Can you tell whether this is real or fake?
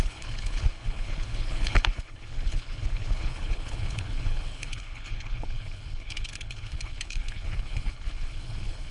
fake